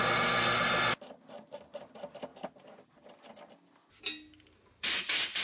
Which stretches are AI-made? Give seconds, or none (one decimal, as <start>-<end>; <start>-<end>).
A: none